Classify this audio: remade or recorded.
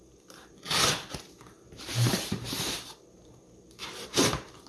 remade